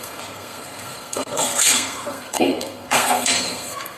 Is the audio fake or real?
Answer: fake